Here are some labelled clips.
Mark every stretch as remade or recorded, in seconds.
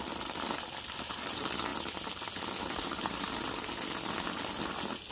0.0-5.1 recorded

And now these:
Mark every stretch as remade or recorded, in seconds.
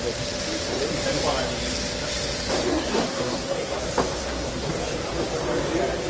0.0-2.7 recorded; 2.7-3.8 remade; 3.8-4.2 recorded; 4.2-4.7 remade; 4.7-6.1 recorded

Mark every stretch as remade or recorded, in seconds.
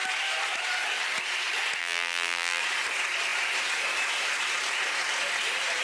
0.0-1.8 recorded; 1.8-2.6 remade; 2.6-5.8 recorded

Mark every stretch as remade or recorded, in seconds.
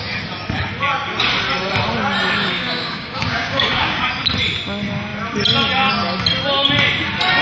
0.0-2.4 recorded; 2.4-4.0 remade; 4.0-7.4 recorded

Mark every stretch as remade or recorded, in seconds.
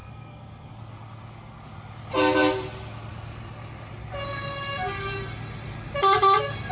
0.0-0.7 remade; 0.7-6.7 recorded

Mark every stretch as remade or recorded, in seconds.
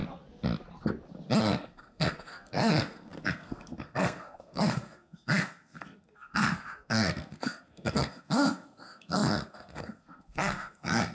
0.0-1.4 recorded; 1.4-11.1 remade